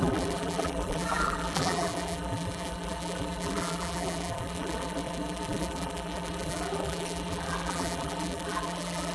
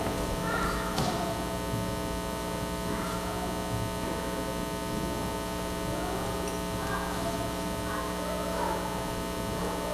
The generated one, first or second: first